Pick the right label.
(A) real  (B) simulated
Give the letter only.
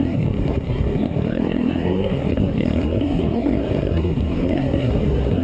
B